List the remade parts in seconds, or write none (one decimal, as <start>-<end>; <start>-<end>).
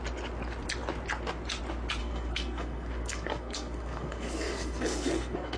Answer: 2.0-5.6